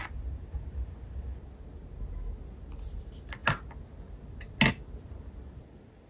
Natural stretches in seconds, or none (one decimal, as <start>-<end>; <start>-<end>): 0.0-6.1